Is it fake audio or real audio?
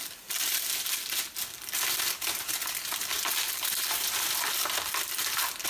real